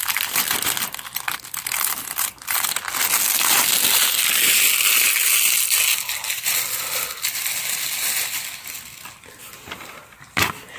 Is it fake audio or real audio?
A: real